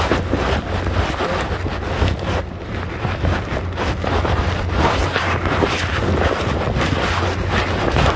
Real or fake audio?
real